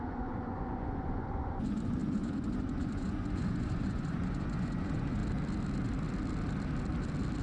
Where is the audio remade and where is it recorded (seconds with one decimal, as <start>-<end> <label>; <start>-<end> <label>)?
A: 0.0-5.2 remade; 5.2-7.4 recorded